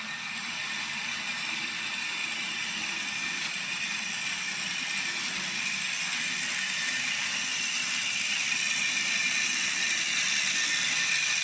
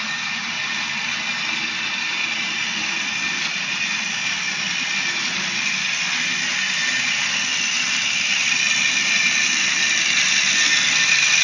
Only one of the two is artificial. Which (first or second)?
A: first